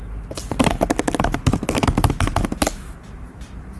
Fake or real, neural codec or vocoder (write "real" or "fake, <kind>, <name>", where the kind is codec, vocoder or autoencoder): real